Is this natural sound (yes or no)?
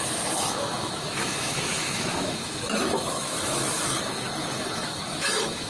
no